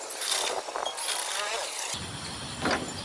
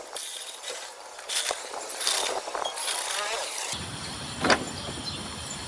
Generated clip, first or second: second